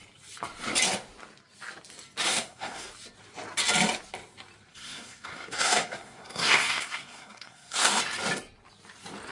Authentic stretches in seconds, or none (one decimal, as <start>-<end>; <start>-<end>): 0.0-2.3; 2.9-4.7; 8.0-9.3